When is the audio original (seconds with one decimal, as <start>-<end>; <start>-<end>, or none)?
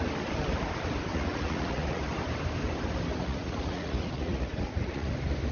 0.0-1.1; 2.0-3.1; 5.1-5.5